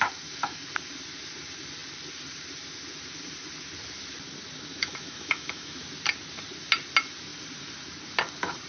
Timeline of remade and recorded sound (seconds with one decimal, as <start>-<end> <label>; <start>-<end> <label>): 0.0-4.7 recorded; 4.7-5.8 remade; 5.8-8.7 recorded